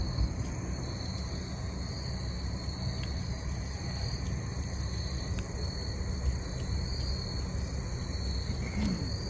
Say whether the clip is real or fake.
real